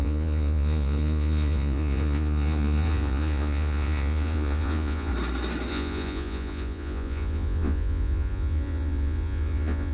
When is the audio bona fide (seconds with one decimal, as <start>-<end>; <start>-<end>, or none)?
5.1-5.7